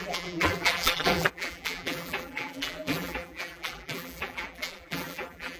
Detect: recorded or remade remade